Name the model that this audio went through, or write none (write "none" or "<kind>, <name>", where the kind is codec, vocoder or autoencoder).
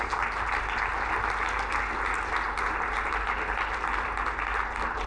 none